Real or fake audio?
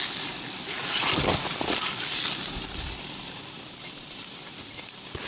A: real